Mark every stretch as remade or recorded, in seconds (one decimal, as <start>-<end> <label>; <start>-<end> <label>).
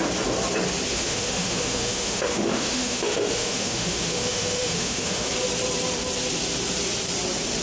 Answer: 0.0-0.9 recorded; 0.9-5.3 remade; 5.3-7.6 recorded